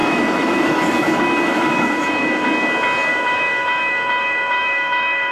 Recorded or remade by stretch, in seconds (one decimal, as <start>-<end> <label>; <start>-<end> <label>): 0.0-2.5 remade; 2.5-3.1 recorded; 3.1-5.3 remade